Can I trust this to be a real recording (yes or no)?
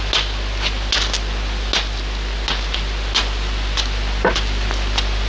yes